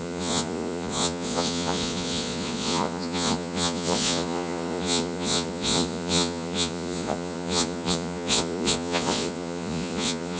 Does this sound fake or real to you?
fake